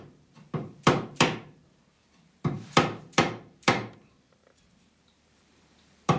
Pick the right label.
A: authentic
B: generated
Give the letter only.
B